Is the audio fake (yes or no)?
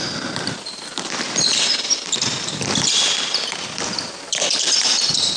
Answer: yes